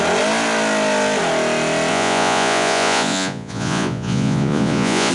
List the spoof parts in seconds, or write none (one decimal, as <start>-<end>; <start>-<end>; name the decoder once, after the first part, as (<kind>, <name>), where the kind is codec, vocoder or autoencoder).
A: 1.9-5.1 (vocoder, Vocos)